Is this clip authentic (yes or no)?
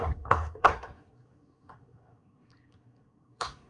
no